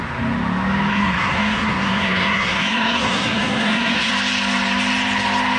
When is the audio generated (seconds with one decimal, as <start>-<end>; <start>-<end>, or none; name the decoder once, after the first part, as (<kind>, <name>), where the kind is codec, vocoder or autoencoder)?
0.9-4.1 (codec, SNAC)